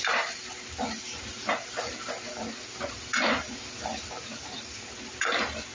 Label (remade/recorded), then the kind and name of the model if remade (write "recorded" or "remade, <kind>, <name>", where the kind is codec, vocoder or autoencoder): recorded